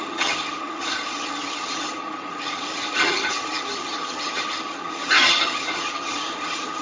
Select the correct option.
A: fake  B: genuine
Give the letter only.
A